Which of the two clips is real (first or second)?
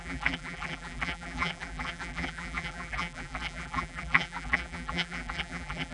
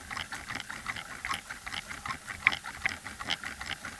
second